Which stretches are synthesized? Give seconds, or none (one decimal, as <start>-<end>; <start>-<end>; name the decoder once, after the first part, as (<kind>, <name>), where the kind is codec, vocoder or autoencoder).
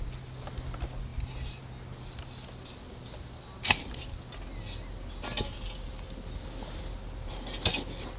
none